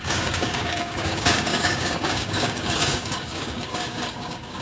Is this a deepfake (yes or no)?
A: yes